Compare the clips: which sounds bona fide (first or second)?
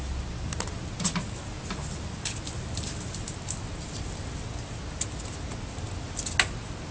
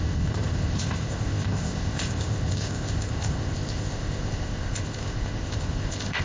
first